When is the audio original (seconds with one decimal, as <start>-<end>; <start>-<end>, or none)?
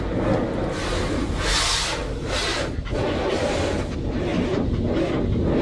0.0-2.5; 3.5-4.3; 5.1-5.6